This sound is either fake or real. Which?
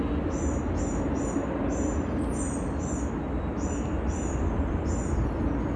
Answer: real